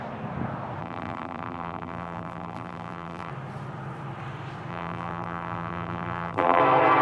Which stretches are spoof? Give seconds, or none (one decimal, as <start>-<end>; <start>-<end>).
0.8-3.3; 4.7-6.6